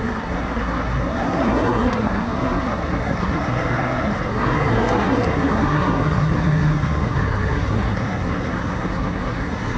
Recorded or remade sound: remade